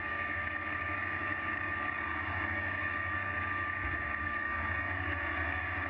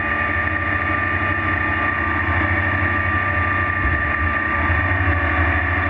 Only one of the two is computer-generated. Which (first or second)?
first